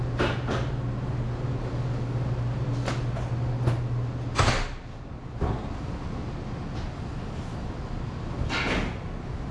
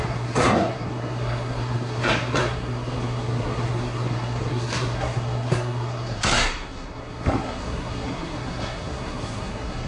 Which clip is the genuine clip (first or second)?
first